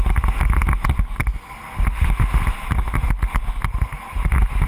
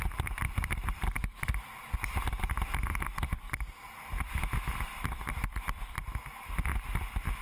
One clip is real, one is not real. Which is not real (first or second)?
second